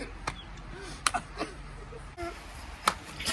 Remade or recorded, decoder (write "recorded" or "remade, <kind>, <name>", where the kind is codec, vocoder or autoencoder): recorded